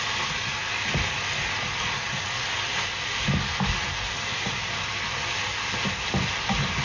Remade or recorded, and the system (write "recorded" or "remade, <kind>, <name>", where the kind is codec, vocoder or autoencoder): recorded